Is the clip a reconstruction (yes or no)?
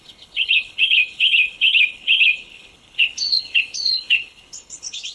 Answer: yes